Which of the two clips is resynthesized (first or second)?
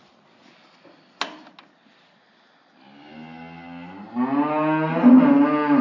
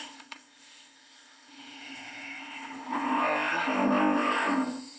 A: second